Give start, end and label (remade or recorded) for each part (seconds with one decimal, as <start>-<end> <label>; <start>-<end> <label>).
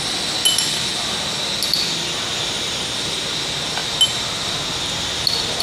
0.0-5.6 recorded